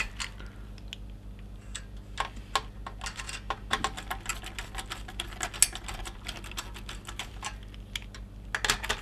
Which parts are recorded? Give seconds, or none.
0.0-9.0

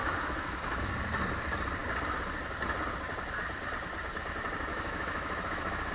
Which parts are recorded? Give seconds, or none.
0.8-4.7

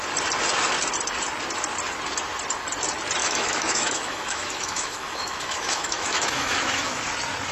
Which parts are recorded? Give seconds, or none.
0.0-3.2; 7.0-7.5

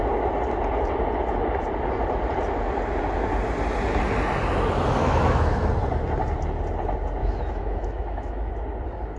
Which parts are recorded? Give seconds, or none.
0.0-5.0; 5.7-7.2; 8.5-9.2

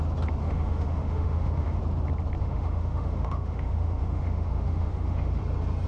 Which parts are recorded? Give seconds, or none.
0.0-0.4; 1.8-2.4; 5.4-5.9

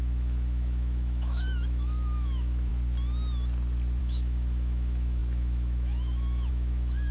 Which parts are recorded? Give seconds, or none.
2.7-4.0

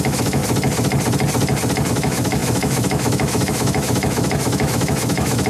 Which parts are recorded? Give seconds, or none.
0.4-1.9

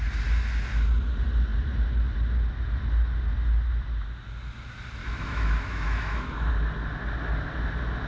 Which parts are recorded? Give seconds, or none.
0.0-5.0; 6.5-8.1